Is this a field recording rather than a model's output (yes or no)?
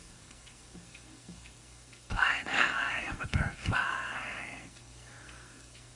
no